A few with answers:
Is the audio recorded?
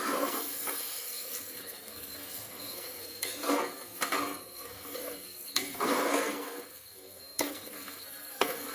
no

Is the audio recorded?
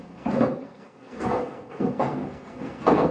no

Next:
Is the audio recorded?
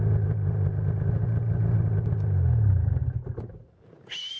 yes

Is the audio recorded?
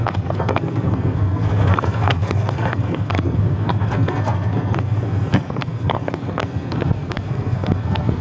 no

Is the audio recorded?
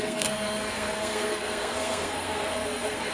no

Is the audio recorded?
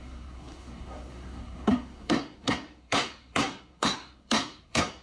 no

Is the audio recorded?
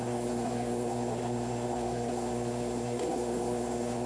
no